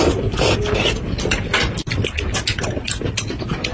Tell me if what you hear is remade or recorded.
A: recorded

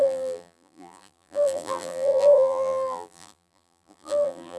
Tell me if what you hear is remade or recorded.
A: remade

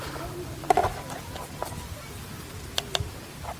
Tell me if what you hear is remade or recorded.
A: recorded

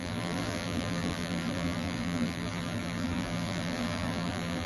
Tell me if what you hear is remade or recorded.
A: remade